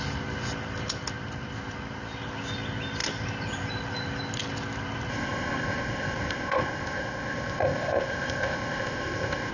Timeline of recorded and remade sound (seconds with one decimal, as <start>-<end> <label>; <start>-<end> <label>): 0.0-5.1 recorded; 5.1-9.5 remade